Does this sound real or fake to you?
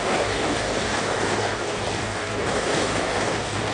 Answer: fake